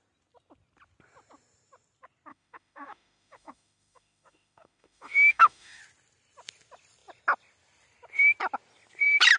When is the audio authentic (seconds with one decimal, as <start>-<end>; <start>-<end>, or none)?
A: 0.0-2.3; 5.8-9.4